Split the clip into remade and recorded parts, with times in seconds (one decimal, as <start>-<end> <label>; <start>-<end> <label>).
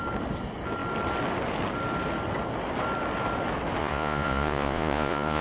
0.0-3.8 recorded; 3.8-5.4 remade